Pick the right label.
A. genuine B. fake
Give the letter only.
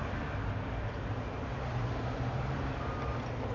A